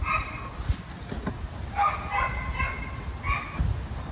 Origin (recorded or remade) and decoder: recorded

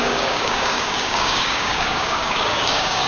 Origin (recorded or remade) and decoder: remade, codec, DAC